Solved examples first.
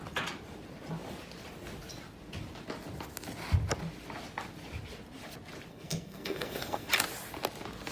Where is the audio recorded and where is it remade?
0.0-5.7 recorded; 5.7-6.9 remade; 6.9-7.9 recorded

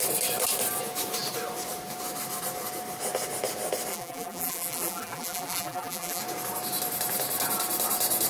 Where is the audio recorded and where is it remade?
0.0-3.9 recorded; 3.9-6.2 remade; 6.2-8.3 recorded

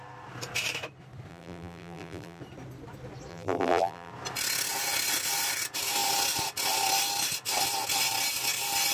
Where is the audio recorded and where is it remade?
0.0-1.3 recorded; 1.3-2.4 remade; 2.4-3.3 recorded; 3.3-4.1 remade; 4.1-8.9 recorded

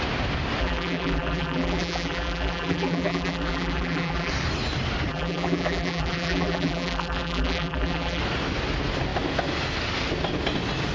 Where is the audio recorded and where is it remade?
0.0-0.6 recorded; 0.6-4.3 remade; 4.3-5.1 recorded; 5.1-8.2 remade; 8.2-10.9 recorded

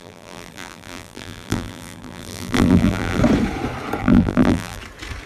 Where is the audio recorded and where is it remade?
0.0-3.2 remade; 3.2-4.0 recorded; 4.0-4.8 remade; 4.8-5.3 recorded

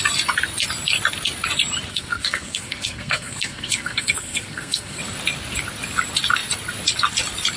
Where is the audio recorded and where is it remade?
0.0-1.9 recorded; 1.9-5.0 remade; 5.0-7.6 recorded

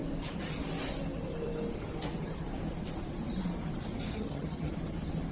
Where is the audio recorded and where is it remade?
0.0-4.1 recorded; 4.1-4.7 remade; 4.7-5.3 recorded

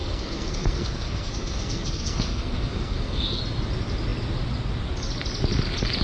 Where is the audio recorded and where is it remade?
0.0-3.4 remade; 3.4-6.0 recorded